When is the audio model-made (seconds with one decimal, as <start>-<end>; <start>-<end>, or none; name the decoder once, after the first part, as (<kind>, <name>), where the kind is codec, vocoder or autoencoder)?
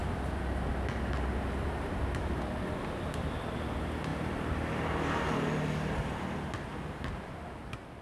none